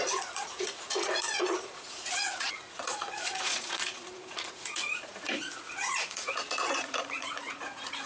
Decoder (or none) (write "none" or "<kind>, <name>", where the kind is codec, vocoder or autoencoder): vocoder, Vocos